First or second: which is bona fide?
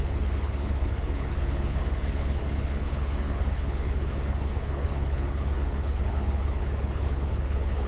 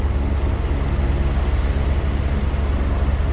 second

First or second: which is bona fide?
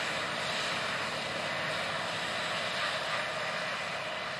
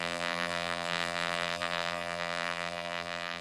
first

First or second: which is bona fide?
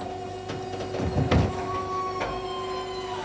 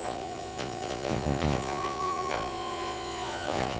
first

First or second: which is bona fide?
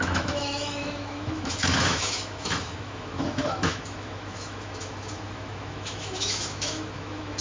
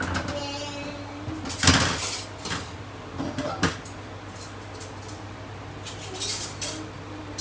second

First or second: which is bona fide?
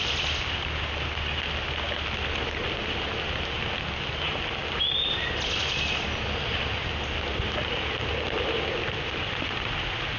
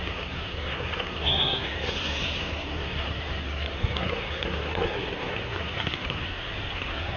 first